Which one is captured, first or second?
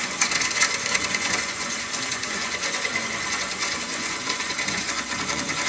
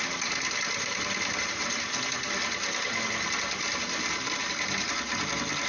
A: second